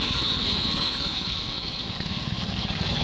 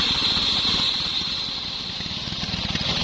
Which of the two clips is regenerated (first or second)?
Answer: first